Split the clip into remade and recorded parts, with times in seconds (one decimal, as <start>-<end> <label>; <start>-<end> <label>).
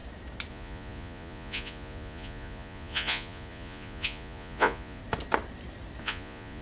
0.0-0.5 recorded; 0.5-5.0 remade; 5.0-6.0 recorded; 6.0-6.6 remade